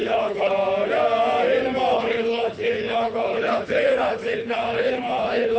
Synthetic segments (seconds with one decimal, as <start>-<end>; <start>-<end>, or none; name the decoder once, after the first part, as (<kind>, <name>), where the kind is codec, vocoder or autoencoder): 0.0-0.5 (codec, HILCodec); 1.9-5.6